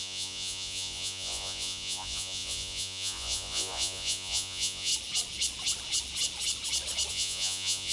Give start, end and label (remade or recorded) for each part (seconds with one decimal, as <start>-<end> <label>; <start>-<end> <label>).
0.0-4.9 remade; 4.9-7.1 recorded; 7.1-7.9 remade